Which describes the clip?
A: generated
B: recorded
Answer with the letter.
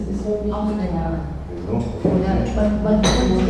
B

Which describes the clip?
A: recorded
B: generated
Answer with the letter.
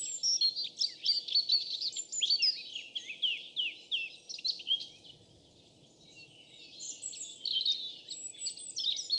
A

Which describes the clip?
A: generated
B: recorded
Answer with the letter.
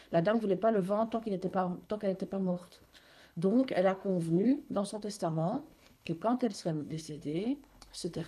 A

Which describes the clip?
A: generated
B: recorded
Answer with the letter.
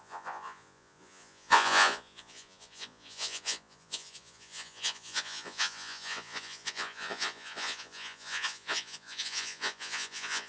A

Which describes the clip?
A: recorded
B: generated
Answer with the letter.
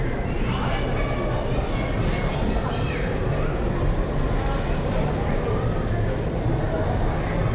A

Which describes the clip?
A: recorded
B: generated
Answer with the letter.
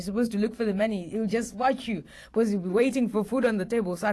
B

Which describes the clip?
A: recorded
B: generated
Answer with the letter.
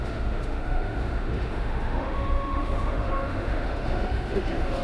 B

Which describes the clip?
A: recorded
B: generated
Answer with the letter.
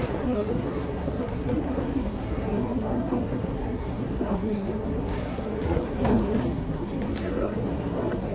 B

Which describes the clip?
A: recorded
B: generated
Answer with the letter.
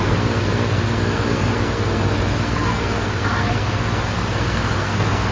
B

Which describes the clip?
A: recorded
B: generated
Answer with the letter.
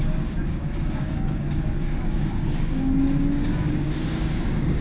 B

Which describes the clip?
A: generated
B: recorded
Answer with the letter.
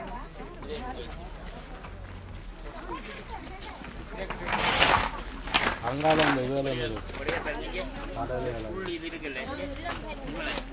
B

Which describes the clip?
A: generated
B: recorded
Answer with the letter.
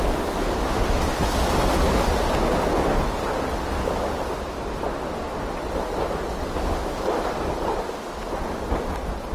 B